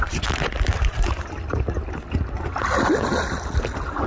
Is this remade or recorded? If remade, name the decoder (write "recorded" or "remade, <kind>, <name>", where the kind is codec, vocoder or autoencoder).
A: recorded